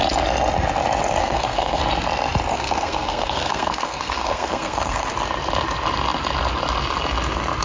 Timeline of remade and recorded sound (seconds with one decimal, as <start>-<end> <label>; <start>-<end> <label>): 0.0-1.2 recorded; 1.2-1.8 remade; 1.8-2.5 recorded; 2.5-5.1 remade; 5.1-7.6 recorded